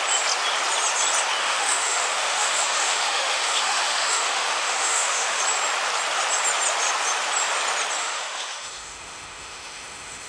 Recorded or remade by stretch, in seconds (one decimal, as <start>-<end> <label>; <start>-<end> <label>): 0.0-1.4 recorded; 1.4-5.4 remade; 5.4-8.0 recorded; 8.0-10.3 remade